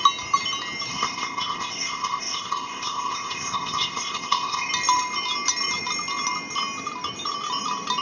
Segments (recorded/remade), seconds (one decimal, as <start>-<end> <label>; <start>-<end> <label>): 0.0-0.9 recorded; 0.9-4.7 remade; 4.7-8.0 recorded